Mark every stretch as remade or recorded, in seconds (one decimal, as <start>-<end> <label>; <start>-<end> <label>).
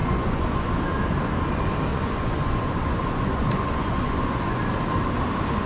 0.0-0.8 remade; 0.8-1.9 recorded; 1.9-4.6 remade; 4.6-5.7 recorded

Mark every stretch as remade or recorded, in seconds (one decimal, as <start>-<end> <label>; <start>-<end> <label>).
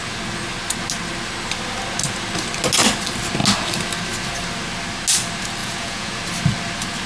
0.0-5.6 recorded; 5.6-6.2 remade; 6.2-7.1 recorded